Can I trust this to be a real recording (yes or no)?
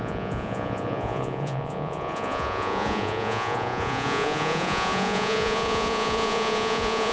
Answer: no